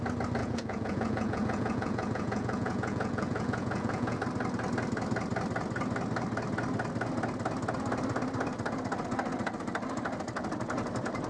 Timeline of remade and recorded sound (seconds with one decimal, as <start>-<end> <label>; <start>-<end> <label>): 0.0-0.4 recorded; 0.4-4.2 remade; 4.2-11.3 recorded